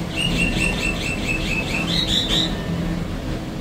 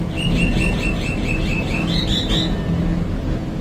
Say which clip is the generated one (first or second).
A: first